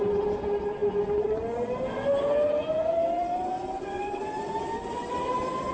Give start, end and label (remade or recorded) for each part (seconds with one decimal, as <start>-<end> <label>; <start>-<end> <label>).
0.0-5.7 recorded